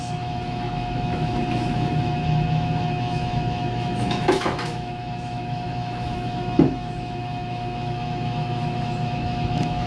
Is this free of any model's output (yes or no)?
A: no